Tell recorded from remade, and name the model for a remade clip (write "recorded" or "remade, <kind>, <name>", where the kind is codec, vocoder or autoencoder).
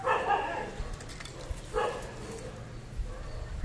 recorded